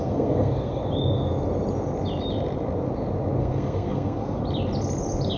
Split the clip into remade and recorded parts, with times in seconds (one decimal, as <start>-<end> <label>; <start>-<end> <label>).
0.0-0.8 remade; 0.8-3.4 recorded; 3.4-4.4 remade; 4.4-5.4 recorded